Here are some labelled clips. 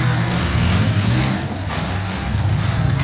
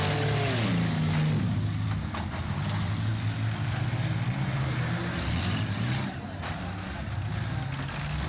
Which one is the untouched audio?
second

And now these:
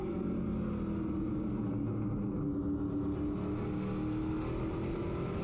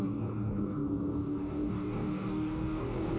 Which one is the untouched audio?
first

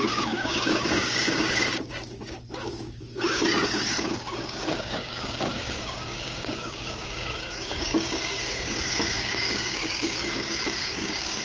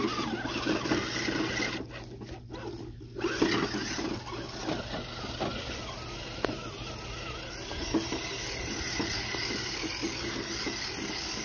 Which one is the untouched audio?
second